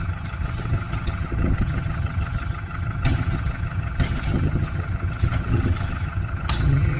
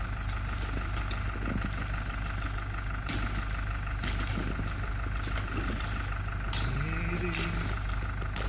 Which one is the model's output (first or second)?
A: first